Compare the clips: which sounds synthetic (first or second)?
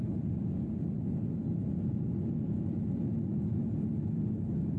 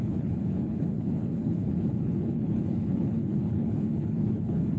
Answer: second